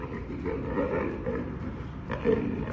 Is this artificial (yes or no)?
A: yes